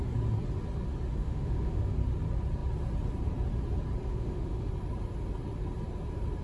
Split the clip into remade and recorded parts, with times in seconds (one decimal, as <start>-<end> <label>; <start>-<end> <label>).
0.0-1.2 recorded; 1.2-1.8 remade; 1.8-4.1 recorded; 4.1-4.7 remade; 4.7-6.4 recorded